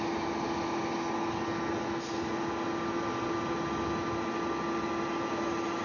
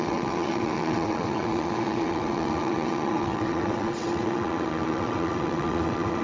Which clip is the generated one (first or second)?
second